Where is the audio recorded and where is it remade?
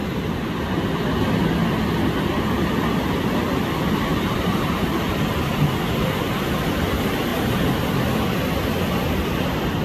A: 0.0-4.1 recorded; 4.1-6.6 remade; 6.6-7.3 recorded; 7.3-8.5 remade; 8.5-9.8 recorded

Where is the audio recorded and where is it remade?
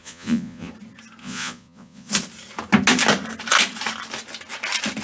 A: 0.0-0.7 remade; 0.7-1.2 recorded; 1.2-2.1 remade; 2.1-5.0 recorded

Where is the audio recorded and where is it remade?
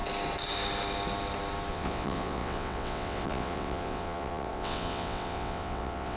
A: 0.0-1.7 recorded; 1.7-6.2 remade